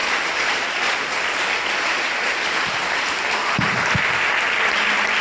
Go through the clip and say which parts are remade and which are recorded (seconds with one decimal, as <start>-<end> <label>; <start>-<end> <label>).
0.0-5.2 recorded